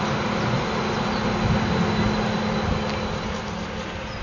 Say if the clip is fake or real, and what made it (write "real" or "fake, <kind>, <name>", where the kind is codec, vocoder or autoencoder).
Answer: real